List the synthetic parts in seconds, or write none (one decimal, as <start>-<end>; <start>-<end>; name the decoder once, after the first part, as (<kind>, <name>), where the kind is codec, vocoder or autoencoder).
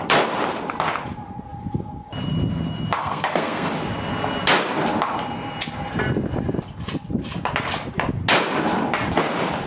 3.0-3.7 (codec, SNAC)